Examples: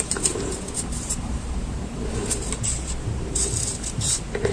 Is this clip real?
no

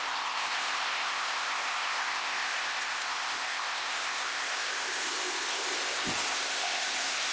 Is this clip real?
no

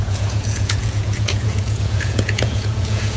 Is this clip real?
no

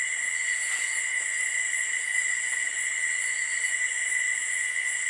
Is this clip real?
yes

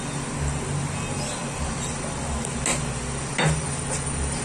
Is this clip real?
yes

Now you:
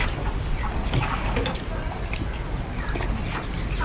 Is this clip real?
yes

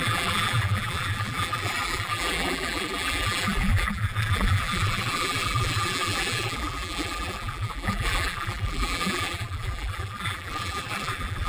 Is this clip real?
no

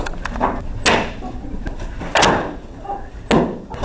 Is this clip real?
yes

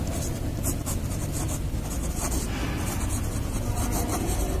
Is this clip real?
yes